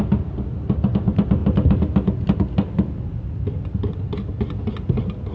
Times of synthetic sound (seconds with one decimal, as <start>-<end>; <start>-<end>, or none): none